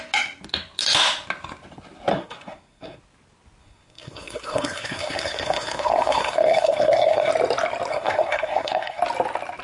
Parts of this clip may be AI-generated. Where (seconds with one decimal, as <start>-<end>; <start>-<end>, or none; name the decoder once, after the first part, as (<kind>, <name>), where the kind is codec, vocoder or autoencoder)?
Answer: 2.1-3.0 (codec, SNAC); 3.6-7.3; 7.9-9.0